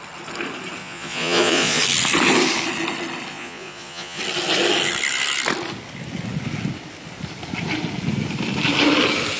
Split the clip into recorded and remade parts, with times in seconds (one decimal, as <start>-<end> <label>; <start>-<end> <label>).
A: 0.0-0.8 recorded; 0.8-1.8 remade; 1.8-3.3 recorded; 3.3-4.2 remade; 4.2-9.4 recorded